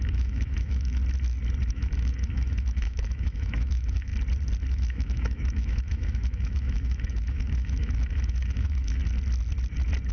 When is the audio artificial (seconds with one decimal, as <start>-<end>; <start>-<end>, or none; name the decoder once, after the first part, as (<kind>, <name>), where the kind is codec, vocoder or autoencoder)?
0.0-1.0 (autoencoder, DAC-VAE); 1.7-4.1; 4.7-9.0